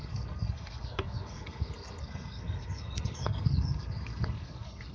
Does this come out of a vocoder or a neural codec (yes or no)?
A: yes